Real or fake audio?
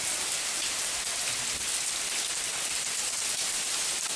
real